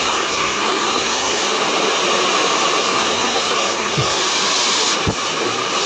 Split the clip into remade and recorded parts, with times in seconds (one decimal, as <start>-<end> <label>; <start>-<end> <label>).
0.0-1.4 remade; 1.4-2.8 recorded; 2.8-4.2 remade; 4.2-5.9 recorded

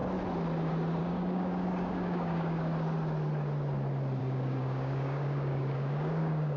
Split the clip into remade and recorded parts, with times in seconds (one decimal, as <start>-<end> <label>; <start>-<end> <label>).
0.0-1.0 recorded; 1.0-2.7 remade; 2.7-4.2 recorded; 4.2-6.6 remade

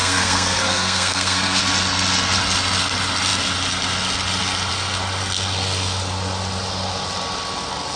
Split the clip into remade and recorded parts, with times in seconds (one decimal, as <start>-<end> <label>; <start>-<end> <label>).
0.0-1.6 remade; 1.6-8.0 recorded

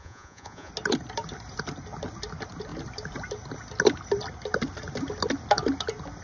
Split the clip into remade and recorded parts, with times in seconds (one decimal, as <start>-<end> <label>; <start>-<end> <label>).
0.0-0.7 remade; 0.7-6.2 recorded

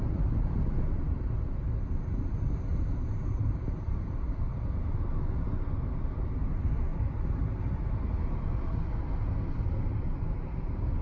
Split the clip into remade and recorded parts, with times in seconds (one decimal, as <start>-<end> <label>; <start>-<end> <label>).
0.0-2.7 recorded; 2.7-5.1 remade; 5.1-6.9 recorded; 6.9-7.6 remade; 7.6-11.0 recorded

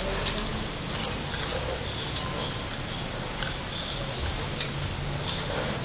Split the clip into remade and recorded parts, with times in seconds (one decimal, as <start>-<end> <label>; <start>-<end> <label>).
0.0-5.8 recorded